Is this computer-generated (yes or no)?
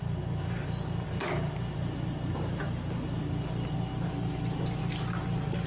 no